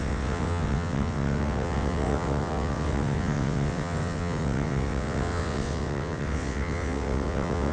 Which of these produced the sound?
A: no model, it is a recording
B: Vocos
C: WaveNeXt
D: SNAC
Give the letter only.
C